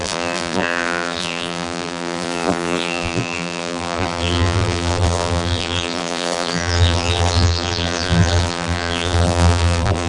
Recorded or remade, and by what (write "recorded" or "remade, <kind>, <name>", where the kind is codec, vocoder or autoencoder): remade, vocoder, BigVGAN v2